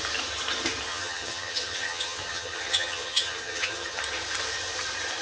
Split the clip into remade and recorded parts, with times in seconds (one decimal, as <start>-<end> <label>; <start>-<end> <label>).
0.0-0.9 recorded; 0.9-4.0 remade; 4.0-5.2 recorded